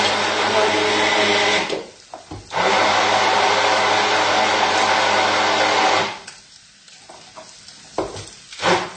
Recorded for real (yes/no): yes